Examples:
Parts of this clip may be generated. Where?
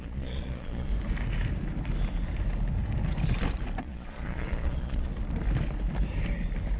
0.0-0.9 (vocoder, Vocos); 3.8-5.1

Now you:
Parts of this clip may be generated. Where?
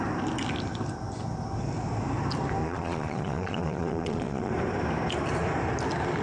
2.6-4.5 (vocoder, Vocos)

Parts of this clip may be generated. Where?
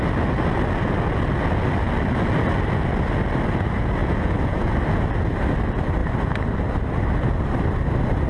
4.0-4.7 (vocoder, Vocos)